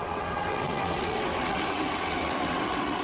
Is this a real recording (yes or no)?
no